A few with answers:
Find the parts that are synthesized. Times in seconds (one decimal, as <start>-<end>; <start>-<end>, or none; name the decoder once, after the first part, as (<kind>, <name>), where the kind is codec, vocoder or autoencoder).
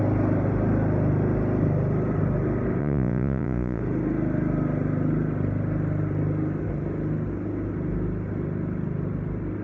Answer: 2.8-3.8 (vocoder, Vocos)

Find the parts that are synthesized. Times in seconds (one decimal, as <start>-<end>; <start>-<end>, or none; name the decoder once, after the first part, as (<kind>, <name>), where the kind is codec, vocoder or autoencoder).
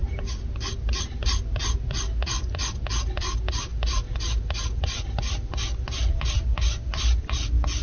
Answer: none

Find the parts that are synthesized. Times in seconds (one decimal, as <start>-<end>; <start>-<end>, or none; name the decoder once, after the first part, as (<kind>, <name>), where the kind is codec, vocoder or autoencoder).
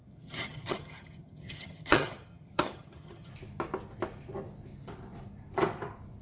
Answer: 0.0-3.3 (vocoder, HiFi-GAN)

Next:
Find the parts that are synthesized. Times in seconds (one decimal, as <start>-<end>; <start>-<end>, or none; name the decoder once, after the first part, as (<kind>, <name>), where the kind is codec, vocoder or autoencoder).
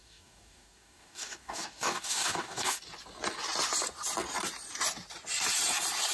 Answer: 0.0-2.8 (codec, DAC)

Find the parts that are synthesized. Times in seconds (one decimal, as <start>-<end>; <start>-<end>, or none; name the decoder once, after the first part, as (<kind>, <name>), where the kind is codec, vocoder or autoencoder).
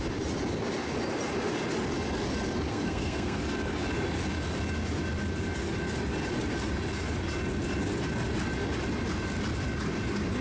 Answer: 2.7-3.4 (codec, SNAC)